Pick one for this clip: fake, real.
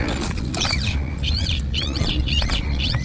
fake